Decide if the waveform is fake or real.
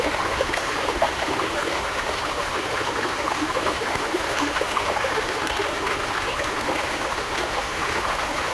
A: fake